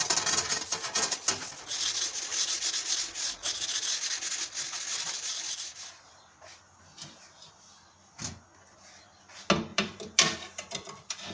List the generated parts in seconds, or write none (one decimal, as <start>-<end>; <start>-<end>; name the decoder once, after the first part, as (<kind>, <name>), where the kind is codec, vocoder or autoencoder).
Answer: 4.9-5.9 (vocoder, BigVGAN v2); 9.7-11.3